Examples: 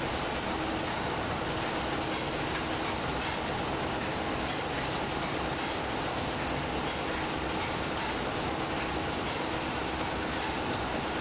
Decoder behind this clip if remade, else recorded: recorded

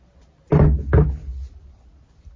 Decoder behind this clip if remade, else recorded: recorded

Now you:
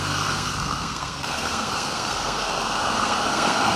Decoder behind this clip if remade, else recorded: remade, codec, SNAC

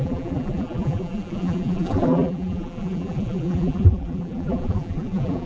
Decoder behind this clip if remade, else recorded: remade, vocoder, BigVGAN v2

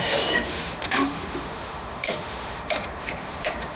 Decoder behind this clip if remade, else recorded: remade, autoencoder, DAC-VAE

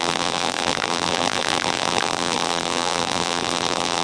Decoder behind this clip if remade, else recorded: remade, vocoder, BigVGAN v2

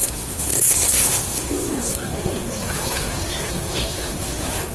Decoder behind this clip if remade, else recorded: remade, codec, SNAC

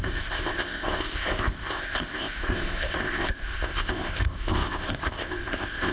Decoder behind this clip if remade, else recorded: remade, codec, ZipCodec